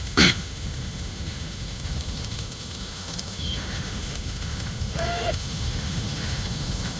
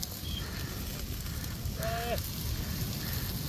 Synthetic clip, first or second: first